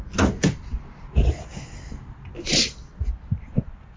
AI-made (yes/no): no